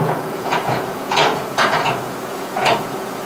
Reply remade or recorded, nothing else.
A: remade